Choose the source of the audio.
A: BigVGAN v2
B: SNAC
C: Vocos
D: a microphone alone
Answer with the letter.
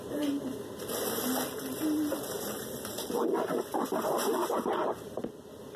A